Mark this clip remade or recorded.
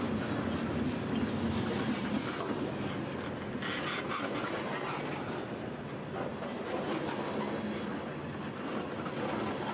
recorded